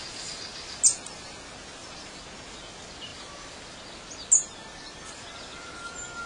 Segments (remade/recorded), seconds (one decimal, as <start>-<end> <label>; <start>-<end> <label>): 0.0-6.3 recorded

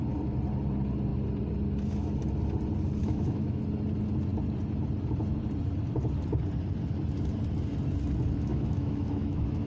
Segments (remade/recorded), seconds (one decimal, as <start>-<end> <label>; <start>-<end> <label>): 0.0-3.0 recorded; 3.0-3.6 remade; 3.6-8.5 recorded; 8.5-9.7 remade

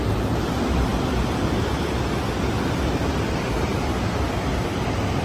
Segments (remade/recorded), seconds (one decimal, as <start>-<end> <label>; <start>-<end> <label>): 0.0-5.2 recorded

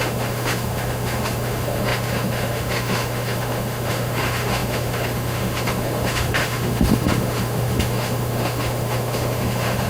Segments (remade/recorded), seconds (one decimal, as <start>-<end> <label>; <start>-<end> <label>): 0.0-9.9 remade

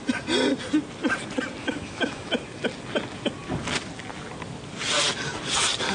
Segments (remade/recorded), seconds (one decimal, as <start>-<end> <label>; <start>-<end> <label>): 0.0-1.6 recorded; 1.6-2.3 remade; 2.3-5.9 recorded

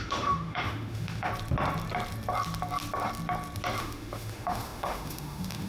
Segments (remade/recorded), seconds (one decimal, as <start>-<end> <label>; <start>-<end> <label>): 0.0-1.3 remade; 1.3-3.8 recorded; 3.8-5.7 remade

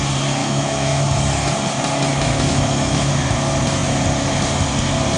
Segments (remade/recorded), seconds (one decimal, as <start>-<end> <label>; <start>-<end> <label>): 0.0-0.4 recorded; 0.4-1.0 remade; 1.0-2.1 recorded; 2.1-3.1 remade; 3.1-5.2 recorded